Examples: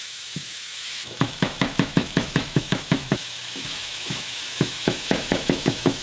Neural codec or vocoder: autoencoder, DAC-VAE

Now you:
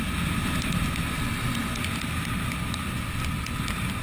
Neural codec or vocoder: none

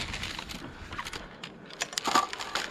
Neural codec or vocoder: none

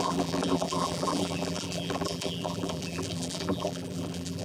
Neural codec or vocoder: vocoder, BigVGAN v2